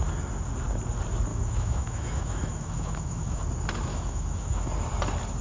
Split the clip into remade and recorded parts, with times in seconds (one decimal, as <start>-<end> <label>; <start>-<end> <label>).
0.0-1.3 recorded; 1.3-3.4 remade; 3.4-3.9 recorded; 3.9-4.7 remade; 4.7-5.4 recorded